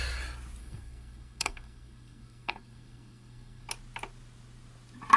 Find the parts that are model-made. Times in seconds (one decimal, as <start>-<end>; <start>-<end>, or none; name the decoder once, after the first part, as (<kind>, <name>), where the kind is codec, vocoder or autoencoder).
0.6-3.7 (codec, SNAC)